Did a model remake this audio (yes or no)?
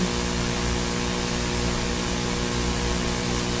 no